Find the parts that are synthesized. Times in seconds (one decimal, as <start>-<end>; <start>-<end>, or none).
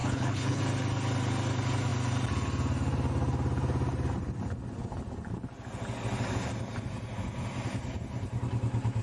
0.0-0.6